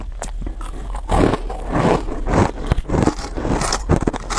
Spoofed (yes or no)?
no